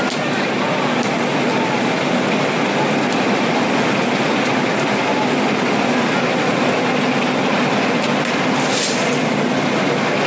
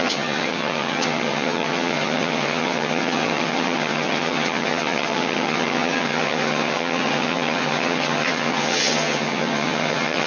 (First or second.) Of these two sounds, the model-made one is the second